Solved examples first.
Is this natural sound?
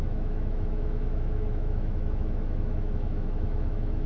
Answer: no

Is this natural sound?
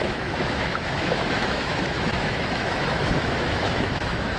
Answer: no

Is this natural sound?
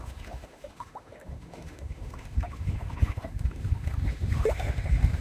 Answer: no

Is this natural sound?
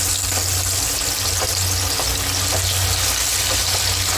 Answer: yes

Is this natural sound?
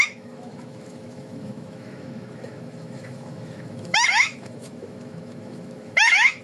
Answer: no